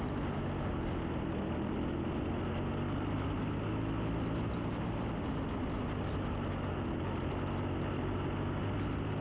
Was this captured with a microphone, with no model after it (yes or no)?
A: yes